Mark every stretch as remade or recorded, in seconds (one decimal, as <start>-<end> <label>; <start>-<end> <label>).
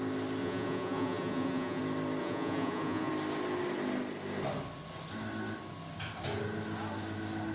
0.0-0.4 recorded; 0.4-1.8 remade; 1.8-2.2 recorded; 2.2-3.1 remade; 3.1-7.5 recorded